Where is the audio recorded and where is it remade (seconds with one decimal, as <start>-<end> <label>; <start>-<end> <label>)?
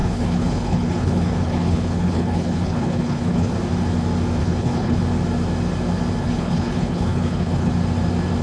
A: 0.0-3.5 remade; 3.5-4.4 recorded; 4.4-5.0 remade; 5.0-6.2 recorded; 6.2-7.7 remade; 7.7-8.4 recorded